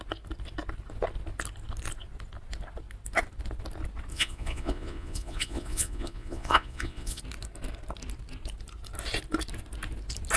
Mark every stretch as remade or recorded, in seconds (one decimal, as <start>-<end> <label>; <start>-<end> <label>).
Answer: 0.0-4.1 recorded; 4.1-7.2 remade; 7.2-10.4 recorded

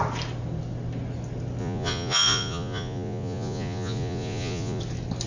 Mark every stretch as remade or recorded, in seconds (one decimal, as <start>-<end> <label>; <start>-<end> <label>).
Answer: 0.0-1.6 recorded; 1.6-4.8 remade; 4.8-5.3 recorded